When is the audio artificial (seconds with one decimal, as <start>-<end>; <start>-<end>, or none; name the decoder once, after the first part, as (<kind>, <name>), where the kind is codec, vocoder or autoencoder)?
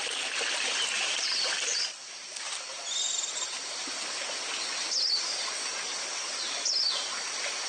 none